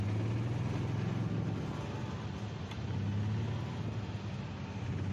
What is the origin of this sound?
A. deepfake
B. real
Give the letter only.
B